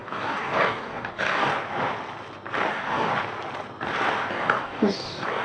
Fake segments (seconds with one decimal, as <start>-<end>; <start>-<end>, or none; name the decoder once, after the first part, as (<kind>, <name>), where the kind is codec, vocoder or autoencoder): 0.0-1.5 (codec, DAC); 2.7-3.1; 4.3-5.4